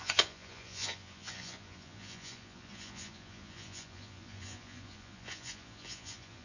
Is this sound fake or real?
fake